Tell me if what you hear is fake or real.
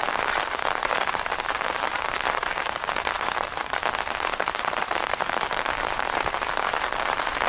fake